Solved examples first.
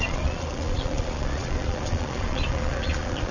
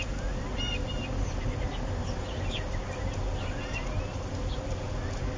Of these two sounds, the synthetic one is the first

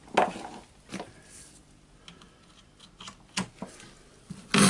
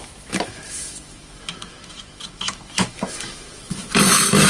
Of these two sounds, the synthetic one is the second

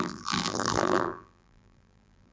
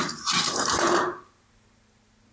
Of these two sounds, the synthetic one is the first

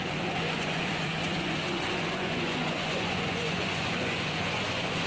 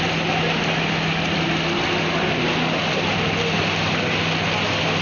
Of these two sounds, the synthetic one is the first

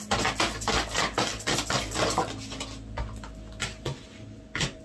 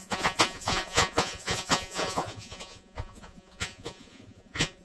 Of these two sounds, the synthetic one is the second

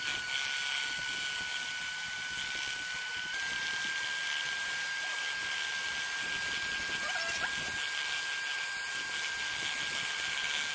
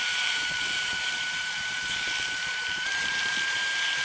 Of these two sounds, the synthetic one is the second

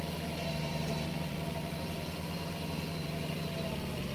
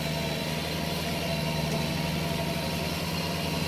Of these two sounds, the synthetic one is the first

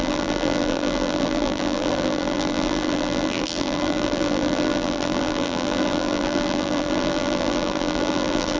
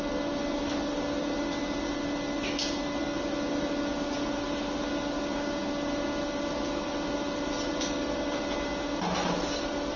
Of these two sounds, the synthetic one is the first